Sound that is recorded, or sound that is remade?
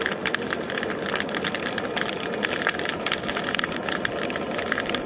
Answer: remade